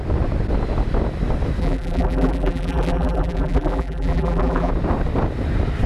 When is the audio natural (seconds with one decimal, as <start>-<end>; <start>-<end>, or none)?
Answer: 0.0-1.6; 4.7-5.9